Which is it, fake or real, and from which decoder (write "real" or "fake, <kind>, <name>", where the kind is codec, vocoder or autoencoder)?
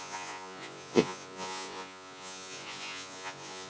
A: fake, vocoder, Vocos